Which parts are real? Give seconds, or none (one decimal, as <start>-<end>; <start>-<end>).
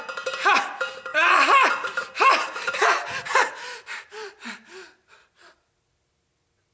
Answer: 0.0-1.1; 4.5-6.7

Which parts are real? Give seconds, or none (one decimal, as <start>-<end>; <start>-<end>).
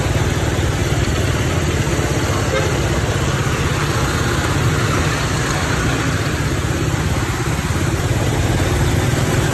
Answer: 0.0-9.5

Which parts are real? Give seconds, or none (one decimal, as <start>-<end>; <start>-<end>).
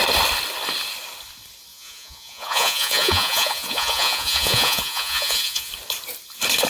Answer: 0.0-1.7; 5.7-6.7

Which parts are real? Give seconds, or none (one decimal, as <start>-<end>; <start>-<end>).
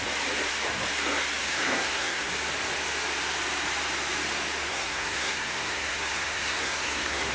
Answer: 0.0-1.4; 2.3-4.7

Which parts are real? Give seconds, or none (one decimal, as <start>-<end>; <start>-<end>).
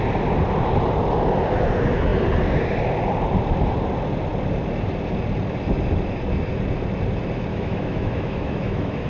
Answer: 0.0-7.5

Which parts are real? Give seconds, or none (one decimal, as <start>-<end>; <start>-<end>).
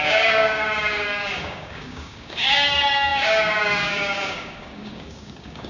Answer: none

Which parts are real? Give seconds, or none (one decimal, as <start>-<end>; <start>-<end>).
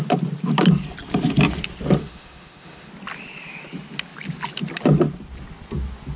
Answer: 0.0-2.0; 2.9-6.2